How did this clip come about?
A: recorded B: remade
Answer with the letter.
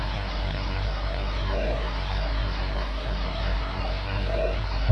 B